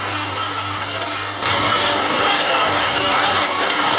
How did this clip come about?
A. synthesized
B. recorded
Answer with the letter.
A